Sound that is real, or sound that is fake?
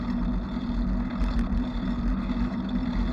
real